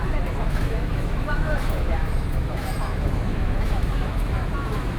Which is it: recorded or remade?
remade